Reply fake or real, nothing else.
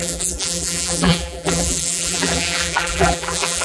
fake